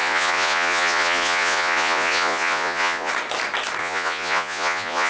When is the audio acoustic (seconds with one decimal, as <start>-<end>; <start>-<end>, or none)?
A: 3.1-3.8